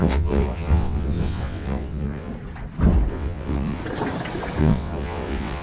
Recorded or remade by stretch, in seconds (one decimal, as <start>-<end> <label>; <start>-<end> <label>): 0.0-2.3 remade; 2.3-3.1 recorded; 3.1-3.8 remade; 3.8-4.6 recorded; 4.6-5.6 remade